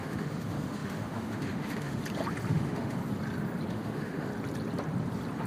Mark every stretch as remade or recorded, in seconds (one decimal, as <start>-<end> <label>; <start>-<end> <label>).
0.0-2.0 remade; 2.0-2.5 recorded; 2.5-3.0 remade; 3.0-3.7 recorded; 3.7-4.3 remade; 4.3-5.5 recorded